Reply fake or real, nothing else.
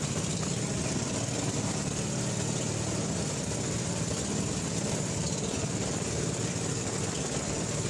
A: fake